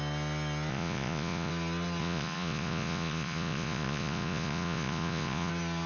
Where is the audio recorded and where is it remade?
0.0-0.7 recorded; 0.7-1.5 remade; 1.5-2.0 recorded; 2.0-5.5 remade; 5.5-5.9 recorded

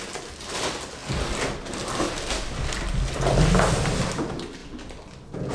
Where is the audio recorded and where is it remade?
0.0-5.5 recorded

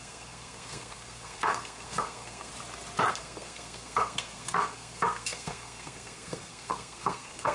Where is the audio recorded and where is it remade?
0.0-2.5 remade; 2.5-3.1 recorded; 3.1-7.5 remade

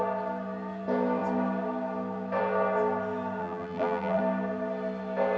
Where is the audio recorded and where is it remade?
0.0-3.4 recorded; 3.4-4.2 remade; 4.2-5.4 recorded